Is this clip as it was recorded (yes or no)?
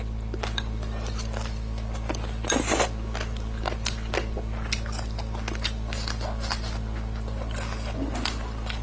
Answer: yes